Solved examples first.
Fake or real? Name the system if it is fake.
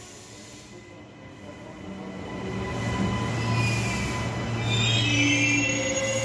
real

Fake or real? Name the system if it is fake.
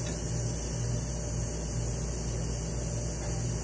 real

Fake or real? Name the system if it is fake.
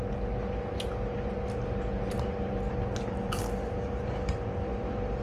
fake, vocoder, BigVGAN v2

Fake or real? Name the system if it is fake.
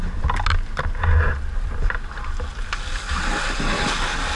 real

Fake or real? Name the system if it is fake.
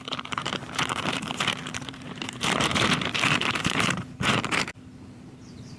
fake, vocoder, BigVGAN v2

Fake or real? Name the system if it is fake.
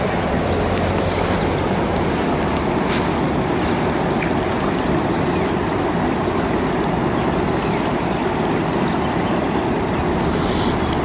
real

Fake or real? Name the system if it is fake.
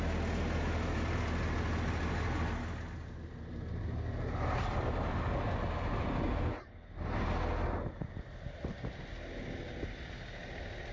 real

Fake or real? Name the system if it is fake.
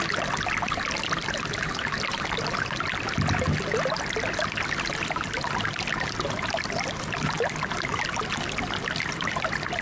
real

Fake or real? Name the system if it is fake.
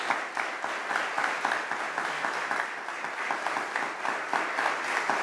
fake, vocoder, BigVGAN v2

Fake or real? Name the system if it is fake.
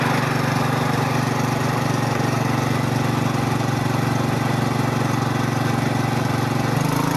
real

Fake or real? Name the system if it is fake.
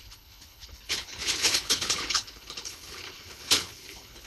fake, codec, HILCodec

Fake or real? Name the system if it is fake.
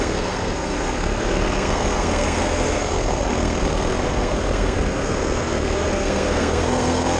fake, codec, SNAC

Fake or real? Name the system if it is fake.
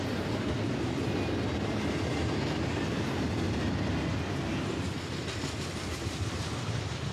real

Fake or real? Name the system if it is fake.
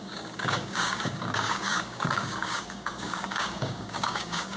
fake, codec, DAC